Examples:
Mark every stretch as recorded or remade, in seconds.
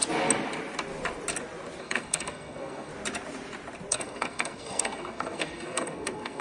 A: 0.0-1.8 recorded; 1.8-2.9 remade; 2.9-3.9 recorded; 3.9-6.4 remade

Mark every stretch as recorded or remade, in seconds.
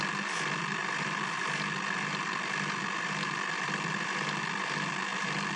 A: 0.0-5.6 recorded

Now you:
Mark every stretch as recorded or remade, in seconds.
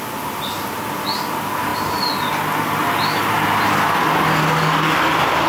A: 0.0-4.4 recorded; 4.4-5.1 remade; 5.1-5.5 recorded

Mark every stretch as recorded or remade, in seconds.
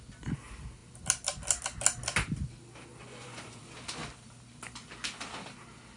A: 0.0-3.0 recorded; 3.0-3.6 remade; 3.6-6.0 recorded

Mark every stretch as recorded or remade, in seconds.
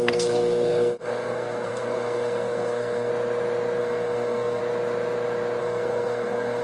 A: 0.0-3.1 remade; 3.1-3.8 recorded; 3.8-4.6 remade; 4.6-5.6 recorded; 5.6-6.6 remade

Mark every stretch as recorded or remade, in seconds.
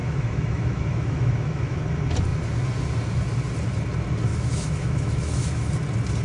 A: 0.0-1.8 remade; 1.8-4.3 recorded; 4.3-5.7 remade; 5.7-6.2 recorded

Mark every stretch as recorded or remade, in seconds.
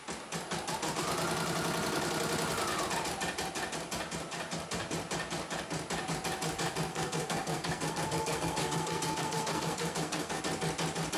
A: 0.0-6.9 recorded; 6.9-10.4 remade; 10.4-11.2 recorded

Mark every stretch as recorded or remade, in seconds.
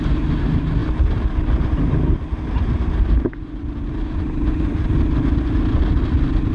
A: 0.0-6.5 recorded